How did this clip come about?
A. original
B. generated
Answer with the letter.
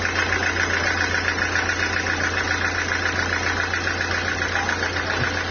A